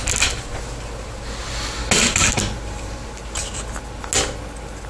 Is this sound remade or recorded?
recorded